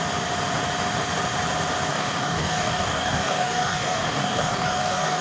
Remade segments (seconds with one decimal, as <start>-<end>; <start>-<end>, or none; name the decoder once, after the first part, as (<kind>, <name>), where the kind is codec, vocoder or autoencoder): 1.9-5.2 (codec, DAC)